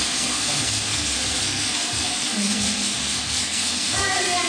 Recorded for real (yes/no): no